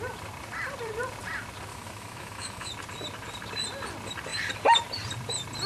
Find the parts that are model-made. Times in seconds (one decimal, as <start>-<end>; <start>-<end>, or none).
1.7-2.7